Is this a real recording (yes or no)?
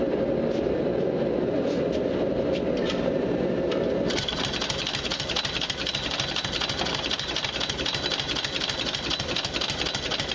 yes